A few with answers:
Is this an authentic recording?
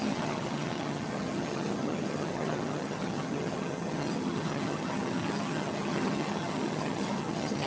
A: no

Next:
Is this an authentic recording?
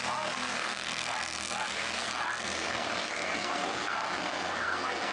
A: no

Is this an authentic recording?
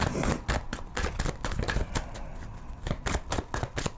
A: yes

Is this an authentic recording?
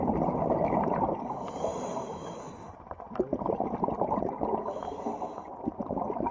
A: yes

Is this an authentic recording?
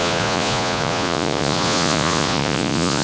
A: no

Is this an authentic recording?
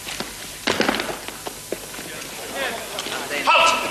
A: yes